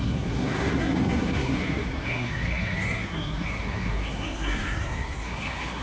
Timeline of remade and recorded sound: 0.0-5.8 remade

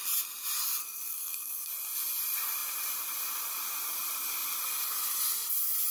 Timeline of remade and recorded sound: 0.0-0.8 recorded; 0.8-1.7 remade; 1.7-5.9 recorded

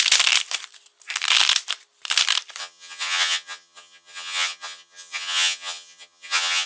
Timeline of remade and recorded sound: 0.0-2.6 recorded; 2.6-6.7 remade

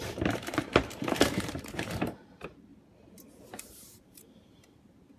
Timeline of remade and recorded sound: 0.0-2.7 remade; 2.7-3.6 recorded; 3.6-5.2 remade